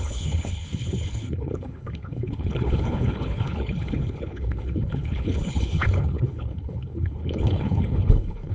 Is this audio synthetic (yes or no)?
yes